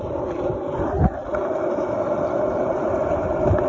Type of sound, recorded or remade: recorded